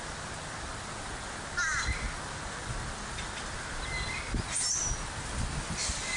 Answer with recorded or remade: recorded